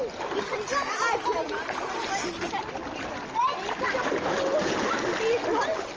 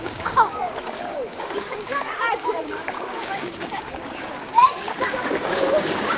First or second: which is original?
first